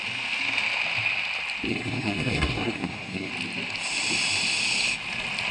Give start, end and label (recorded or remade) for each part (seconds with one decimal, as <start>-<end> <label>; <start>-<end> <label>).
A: 0.0-1.7 recorded; 1.7-3.3 remade; 3.3-5.5 recorded